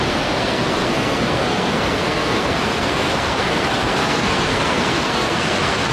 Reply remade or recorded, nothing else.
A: remade